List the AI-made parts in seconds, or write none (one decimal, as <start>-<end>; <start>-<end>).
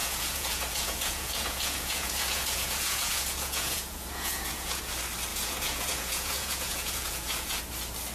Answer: 0.0-4.8; 5.3-7.6